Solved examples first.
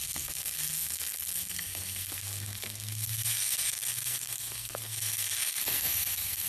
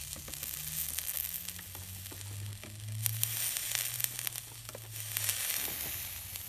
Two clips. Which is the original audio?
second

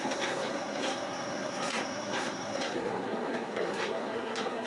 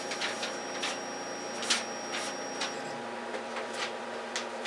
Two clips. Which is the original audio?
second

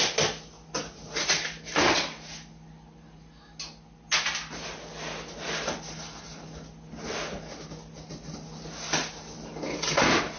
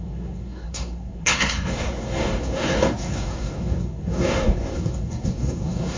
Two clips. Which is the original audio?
first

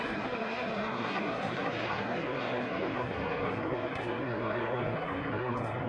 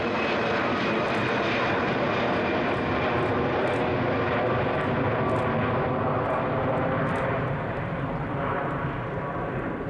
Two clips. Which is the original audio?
second